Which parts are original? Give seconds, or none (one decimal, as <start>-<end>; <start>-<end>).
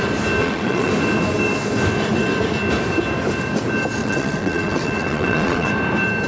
0.0-0.4; 0.9-4.0; 5.7-6.3